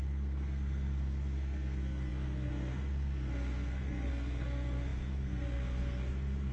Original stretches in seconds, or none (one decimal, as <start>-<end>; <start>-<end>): none